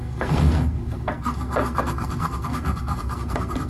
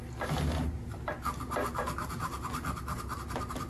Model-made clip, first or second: first